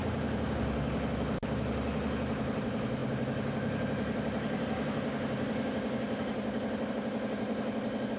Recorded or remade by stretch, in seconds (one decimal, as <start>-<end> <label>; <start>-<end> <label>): 0.0-8.2 recorded